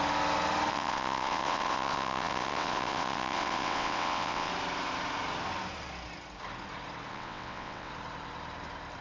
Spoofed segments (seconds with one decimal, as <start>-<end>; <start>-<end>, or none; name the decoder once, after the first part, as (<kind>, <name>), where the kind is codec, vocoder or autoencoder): 0.7-4.5 (vocoder, WaveNeXt); 7.1-7.9